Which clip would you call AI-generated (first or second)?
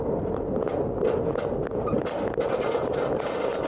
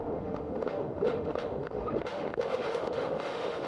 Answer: second